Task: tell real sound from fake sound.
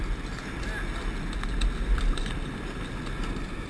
real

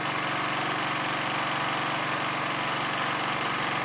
real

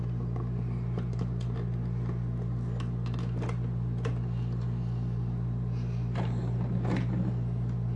real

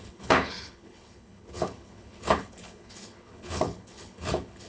fake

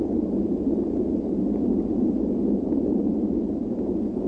real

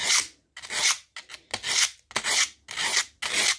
real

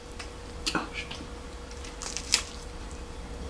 real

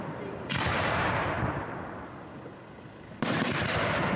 real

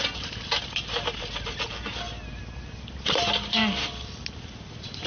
real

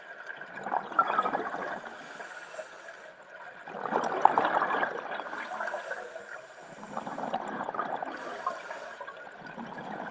real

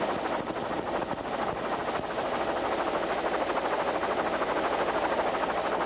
real